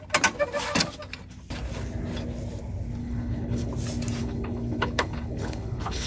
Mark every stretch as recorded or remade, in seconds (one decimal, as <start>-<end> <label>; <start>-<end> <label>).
0.0-3.0 recorded; 3.0-3.7 remade; 3.7-4.2 recorded; 4.2-6.1 remade